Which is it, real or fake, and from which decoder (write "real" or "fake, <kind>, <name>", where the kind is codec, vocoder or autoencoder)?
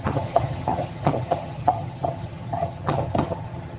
fake, vocoder, HiFi-GAN